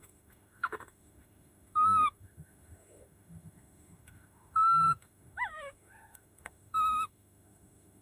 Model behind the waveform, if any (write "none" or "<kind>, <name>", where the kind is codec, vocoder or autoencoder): autoencoder, DAC-VAE